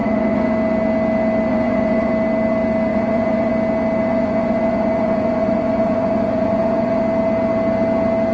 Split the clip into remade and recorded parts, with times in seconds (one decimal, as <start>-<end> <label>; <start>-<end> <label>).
0.0-0.5 remade; 0.5-1.5 recorded; 1.5-2.1 remade; 2.1-2.9 recorded; 2.9-3.5 remade; 3.5-4.1 recorded; 4.1-7.0 remade; 7.0-8.3 recorded